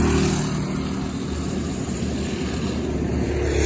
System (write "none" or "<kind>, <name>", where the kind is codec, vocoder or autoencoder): none